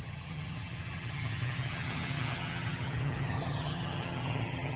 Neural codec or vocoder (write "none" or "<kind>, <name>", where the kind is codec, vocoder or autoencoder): vocoder, HiFi-GAN